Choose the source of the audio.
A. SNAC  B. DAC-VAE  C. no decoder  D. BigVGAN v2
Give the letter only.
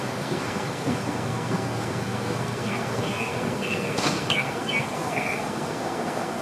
A